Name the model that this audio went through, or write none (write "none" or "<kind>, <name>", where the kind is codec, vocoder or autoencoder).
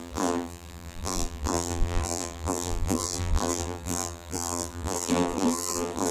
vocoder, BigVGAN v2